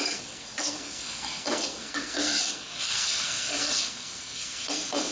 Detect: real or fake fake